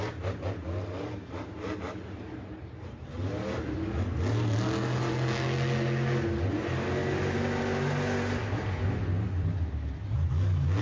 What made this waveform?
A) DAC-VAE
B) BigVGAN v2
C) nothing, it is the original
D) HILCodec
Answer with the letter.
C